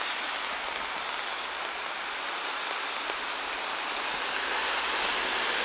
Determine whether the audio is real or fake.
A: real